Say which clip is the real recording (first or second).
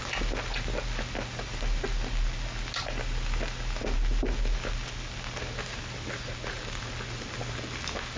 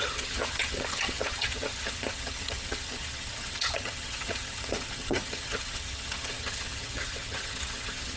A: first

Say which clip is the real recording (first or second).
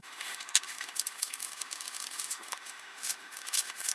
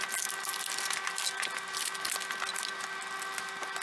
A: second